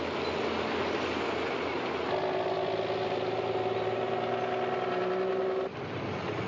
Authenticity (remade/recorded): recorded